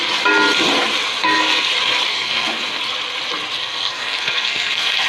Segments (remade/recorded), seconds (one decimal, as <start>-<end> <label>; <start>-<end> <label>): 0.0-1.2 recorded; 1.2-1.7 remade; 1.7-2.1 recorded; 2.1-2.8 remade; 2.8-3.6 recorded; 3.6-5.1 remade